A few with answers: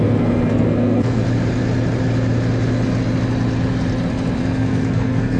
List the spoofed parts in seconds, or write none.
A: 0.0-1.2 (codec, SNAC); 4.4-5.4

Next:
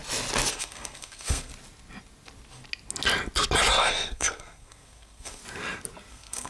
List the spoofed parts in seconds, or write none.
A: 0.5-1.5 (codec, SNAC); 3.8-5.4; 6.1-6.5

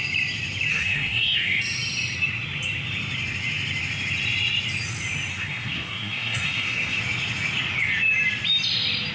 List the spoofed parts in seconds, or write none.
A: 0.7-1.6 (codec, SNAC); 5.3-7.0

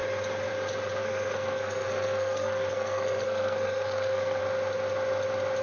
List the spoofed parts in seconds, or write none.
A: 1.0-4.4 (codec, SNAC)

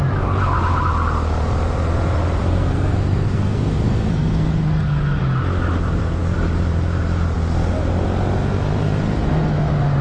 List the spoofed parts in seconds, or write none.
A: 2.4-5.2 (codec, SNAC)